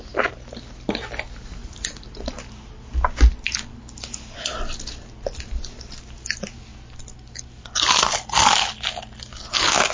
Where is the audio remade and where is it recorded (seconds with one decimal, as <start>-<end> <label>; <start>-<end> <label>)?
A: 0.0-9.9 recorded

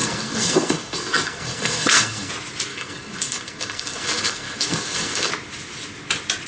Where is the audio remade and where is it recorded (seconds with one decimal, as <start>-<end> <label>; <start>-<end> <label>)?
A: 0.0-2.3 remade; 2.3-2.7 recorded; 2.7-5.3 remade; 5.3-6.5 recorded